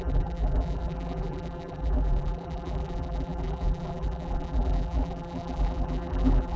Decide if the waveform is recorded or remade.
remade